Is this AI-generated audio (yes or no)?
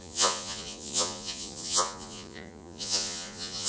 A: yes